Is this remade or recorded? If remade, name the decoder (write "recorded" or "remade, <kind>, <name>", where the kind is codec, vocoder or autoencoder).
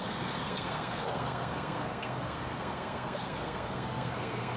remade, codec, SNAC